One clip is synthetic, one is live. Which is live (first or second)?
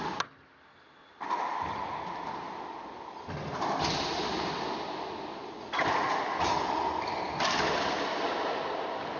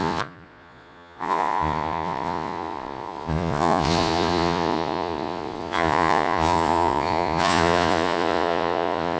first